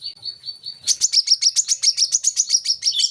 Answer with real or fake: real